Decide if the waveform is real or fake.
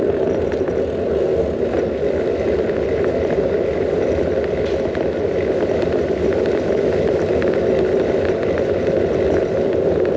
real